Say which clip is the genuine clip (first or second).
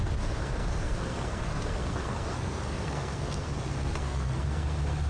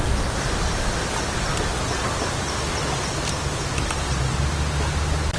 second